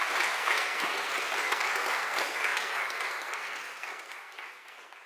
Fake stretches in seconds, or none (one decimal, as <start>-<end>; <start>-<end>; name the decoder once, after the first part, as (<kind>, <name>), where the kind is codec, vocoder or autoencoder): 0.0-5.1 (codec, SNAC)